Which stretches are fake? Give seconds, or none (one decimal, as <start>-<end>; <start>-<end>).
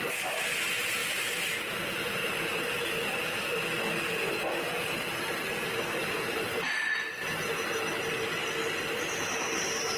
1.0-3.4; 6.0-6.7